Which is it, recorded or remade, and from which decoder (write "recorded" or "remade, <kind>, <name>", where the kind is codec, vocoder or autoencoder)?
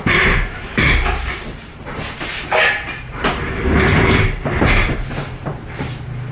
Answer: remade, vocoder, BigVGAN v2